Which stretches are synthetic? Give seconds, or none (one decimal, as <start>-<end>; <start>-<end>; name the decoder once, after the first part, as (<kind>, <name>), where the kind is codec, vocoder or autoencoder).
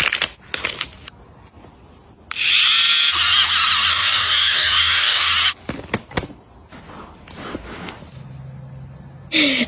3.9-5.3 (codec, DAC)